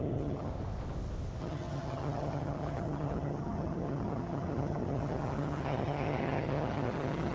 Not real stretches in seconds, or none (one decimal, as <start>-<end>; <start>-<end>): 0.0-0.5; 1.4-7.3